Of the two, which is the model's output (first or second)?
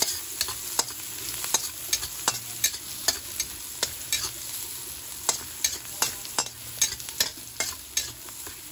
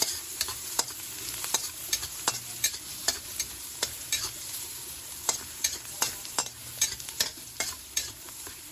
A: second